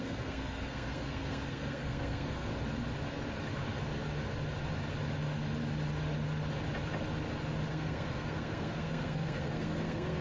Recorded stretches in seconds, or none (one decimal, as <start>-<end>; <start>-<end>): 2.5-7.7